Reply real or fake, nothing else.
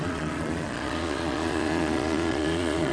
fake